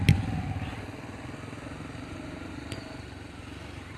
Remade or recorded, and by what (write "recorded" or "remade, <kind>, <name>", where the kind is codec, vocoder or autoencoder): recorded